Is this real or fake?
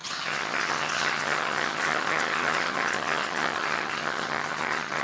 fake